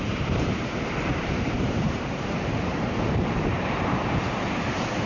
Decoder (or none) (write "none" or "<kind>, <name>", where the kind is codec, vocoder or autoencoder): vocoder, BigVGAN v2